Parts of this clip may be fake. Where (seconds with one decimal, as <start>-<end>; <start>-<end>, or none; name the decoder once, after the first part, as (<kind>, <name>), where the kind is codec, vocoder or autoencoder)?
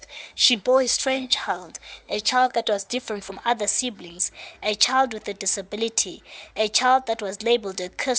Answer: 0.0-3.3 (codec, SNAC)